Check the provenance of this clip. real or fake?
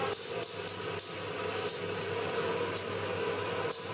real